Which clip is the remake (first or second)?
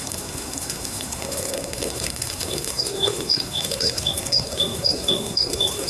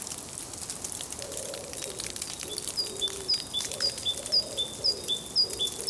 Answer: first